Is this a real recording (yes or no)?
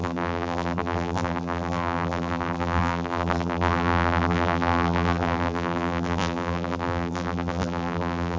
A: no